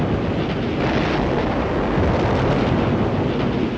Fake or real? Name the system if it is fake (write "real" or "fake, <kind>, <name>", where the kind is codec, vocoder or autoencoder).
real